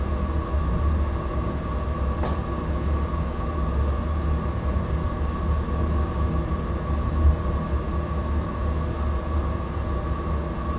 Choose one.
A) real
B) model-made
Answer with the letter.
A